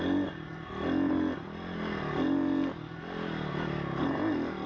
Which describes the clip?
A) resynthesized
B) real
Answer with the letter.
B